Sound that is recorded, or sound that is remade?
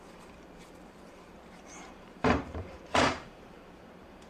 remade